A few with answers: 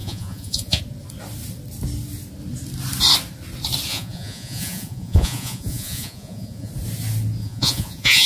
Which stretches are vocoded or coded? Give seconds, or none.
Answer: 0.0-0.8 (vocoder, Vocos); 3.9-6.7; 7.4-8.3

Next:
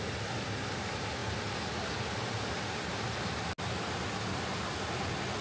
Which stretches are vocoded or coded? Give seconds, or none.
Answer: none

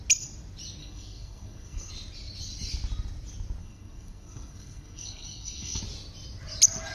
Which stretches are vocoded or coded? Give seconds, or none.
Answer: 0.8-1.9 (codec, SNAC); 3.6-5.8

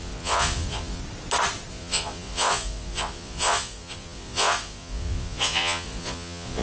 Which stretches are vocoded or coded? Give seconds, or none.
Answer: 0.0-1.0 (vocoder, Vocos); 1.7-6.6

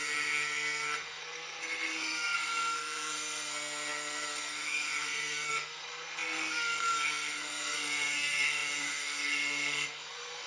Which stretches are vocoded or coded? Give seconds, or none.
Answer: 0.0-10.5 (codec, SNAC)

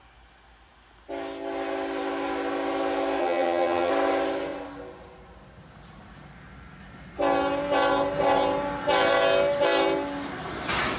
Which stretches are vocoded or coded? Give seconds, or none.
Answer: 3.2-3.9 (vocoder, HiFi-GAN)